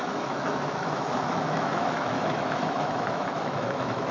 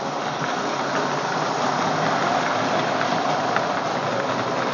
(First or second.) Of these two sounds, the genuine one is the second